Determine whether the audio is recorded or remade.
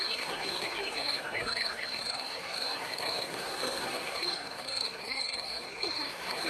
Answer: remade